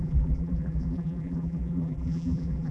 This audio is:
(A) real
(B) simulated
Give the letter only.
B